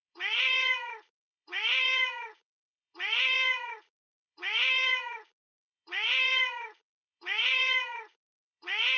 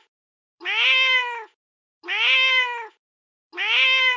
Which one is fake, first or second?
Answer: first